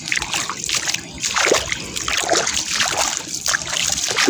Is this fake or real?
real